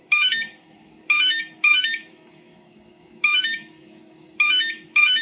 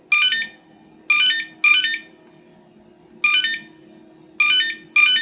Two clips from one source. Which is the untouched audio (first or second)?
second